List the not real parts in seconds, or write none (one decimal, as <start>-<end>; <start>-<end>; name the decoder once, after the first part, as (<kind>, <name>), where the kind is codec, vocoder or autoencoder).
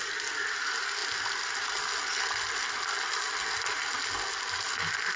none